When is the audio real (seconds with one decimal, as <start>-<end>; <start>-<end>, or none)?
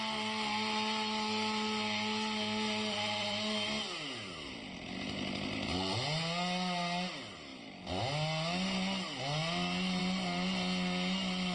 0.0-11.5